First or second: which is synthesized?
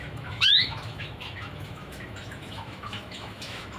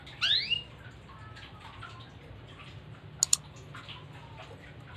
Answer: first